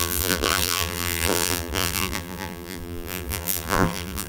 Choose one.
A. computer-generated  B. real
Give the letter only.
A